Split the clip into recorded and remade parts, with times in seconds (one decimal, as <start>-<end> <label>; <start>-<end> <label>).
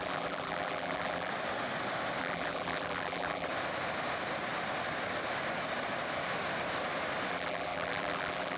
0.0-1.3 remade; 1.3-2.2 recorded; 2.2-3.5 remade; 3.5-7.3 recorded; 7.3-8.6 remade